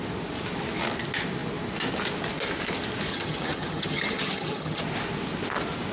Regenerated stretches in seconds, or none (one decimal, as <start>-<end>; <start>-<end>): 3.1-4.8